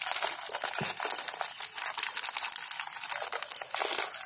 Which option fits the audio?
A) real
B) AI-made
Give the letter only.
A